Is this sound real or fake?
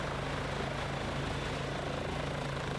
real